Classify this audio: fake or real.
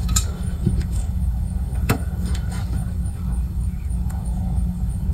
fake